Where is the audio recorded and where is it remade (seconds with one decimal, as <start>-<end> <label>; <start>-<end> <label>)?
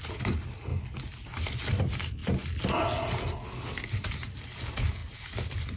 0.0-5.8 recorded